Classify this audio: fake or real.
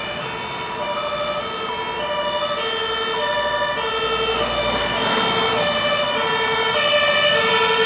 real